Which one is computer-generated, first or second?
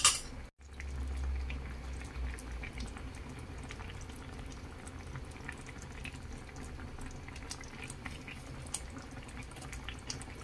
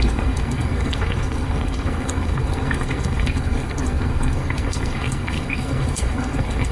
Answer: second